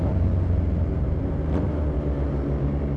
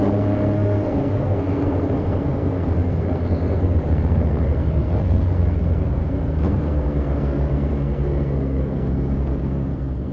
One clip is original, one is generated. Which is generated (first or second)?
second